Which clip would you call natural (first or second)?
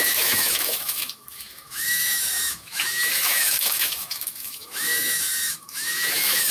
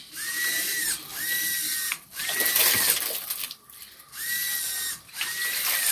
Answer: second